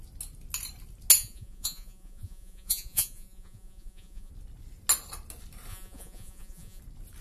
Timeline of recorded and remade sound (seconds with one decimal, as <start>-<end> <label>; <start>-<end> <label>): 0.0-1.2 recorded; 1.2-4.3 remade; 4.3-5.7 recorded; 5.7-6.8 remade; 6.8-7.2 recorded